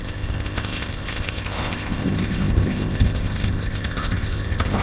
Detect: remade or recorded remade